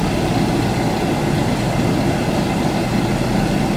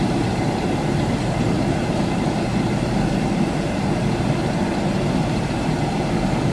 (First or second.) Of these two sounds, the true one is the first